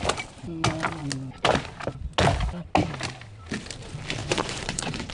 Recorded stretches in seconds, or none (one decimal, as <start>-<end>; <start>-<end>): 0.0-4.2